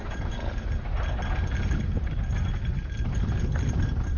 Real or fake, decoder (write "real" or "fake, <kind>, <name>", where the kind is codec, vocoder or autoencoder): real